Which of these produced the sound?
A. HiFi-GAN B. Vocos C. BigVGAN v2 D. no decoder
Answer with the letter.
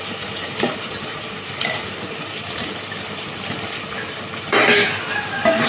C